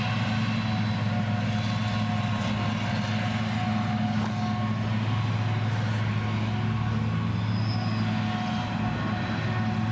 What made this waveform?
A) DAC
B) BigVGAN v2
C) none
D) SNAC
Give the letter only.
C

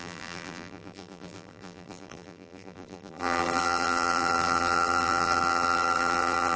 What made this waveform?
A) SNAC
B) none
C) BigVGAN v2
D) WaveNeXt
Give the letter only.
C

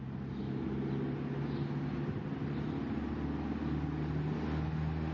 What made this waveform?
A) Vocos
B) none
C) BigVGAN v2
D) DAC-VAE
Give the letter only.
B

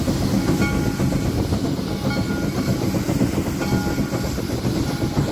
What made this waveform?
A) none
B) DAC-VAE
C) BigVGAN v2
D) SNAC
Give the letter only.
A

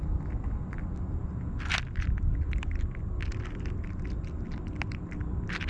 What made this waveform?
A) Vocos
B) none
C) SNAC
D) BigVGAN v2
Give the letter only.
B